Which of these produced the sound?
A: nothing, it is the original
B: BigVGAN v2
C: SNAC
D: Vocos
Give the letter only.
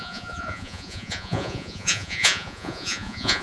D